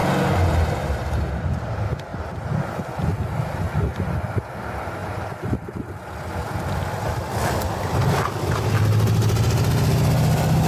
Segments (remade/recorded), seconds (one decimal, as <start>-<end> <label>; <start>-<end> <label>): 0.0-10.7 recorded